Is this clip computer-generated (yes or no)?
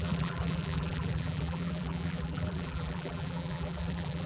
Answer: yes